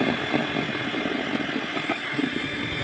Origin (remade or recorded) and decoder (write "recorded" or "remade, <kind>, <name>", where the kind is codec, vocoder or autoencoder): recorded